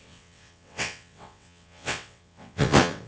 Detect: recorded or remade remade